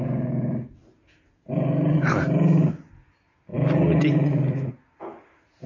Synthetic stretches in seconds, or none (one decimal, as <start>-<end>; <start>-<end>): none